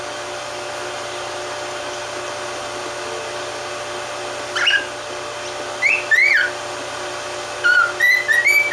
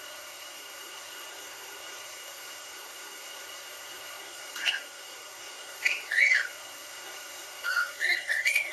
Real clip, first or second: first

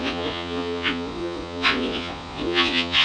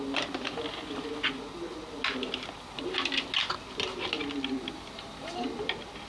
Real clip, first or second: second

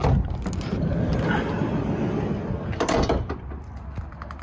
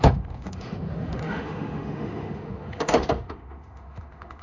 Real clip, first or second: first